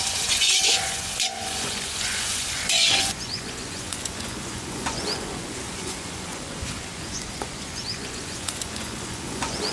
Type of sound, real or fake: fake